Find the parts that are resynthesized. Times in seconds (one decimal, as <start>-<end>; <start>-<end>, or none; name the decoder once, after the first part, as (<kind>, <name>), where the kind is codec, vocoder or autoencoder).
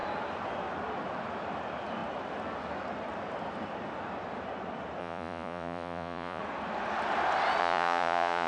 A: 5.0-6.4 (vocoder, Vocos); 7.6-8.5